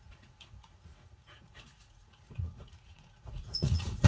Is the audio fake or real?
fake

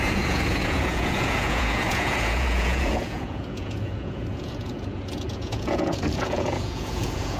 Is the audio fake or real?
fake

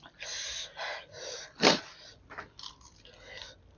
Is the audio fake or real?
real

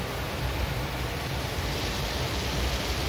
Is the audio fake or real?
real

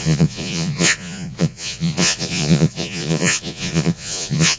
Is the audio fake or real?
fake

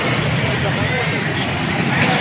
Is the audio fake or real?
real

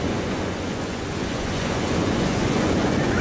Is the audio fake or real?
fake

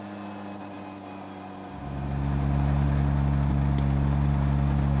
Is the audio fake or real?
real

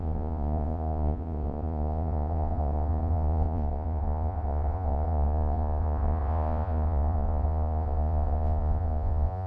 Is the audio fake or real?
fake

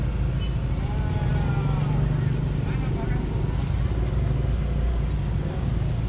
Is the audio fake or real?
real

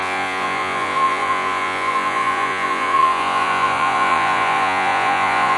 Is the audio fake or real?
fake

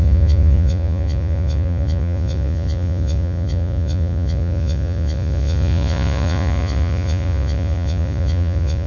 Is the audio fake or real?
fake